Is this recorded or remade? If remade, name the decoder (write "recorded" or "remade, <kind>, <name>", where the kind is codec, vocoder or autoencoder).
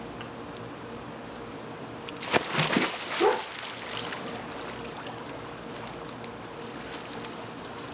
recorded